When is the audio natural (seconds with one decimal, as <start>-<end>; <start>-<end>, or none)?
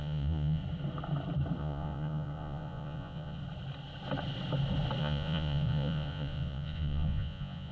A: 0.6-1.6; 3.4-5.0